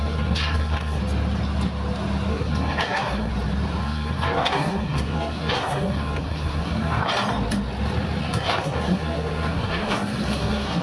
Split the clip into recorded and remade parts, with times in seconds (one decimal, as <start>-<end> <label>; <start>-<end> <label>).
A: 0.0-1.0 remade; 1.0-2.3 recorded; 2.3-3.3 remade; 3.3-3.8 recorded; 3.8-7.1 remade; 7.1-8.2 recorded; 8.2-10.8 remade